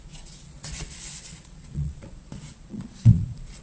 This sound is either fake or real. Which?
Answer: fake